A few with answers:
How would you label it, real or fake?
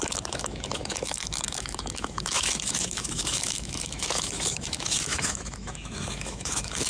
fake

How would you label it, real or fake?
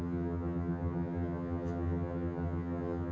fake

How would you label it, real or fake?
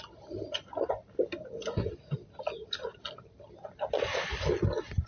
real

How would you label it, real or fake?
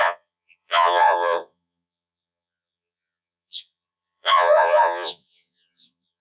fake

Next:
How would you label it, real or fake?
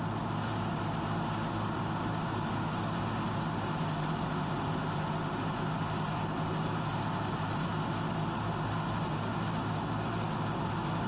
real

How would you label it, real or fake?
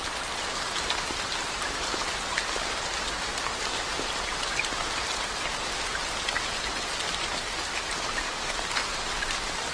real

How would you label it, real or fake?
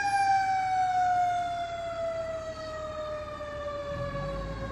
real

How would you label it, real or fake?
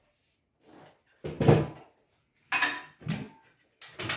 real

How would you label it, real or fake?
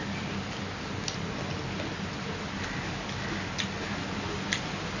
real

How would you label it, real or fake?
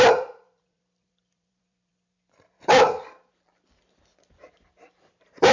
fake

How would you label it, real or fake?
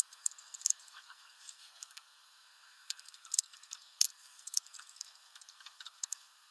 fake